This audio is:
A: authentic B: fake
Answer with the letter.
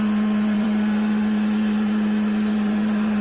B